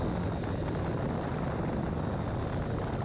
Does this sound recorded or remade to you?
recorded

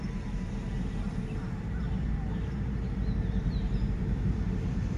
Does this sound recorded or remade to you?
remade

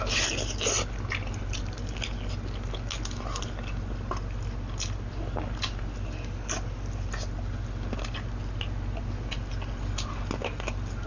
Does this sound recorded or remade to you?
recorded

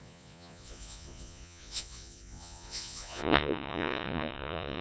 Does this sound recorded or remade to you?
remade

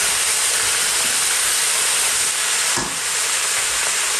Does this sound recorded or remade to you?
recorded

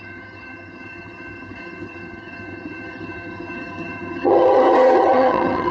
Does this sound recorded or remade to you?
remade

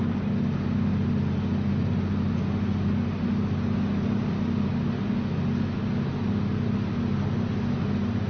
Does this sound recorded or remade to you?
recorded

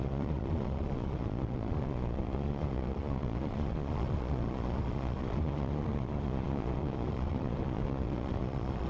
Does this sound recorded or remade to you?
remade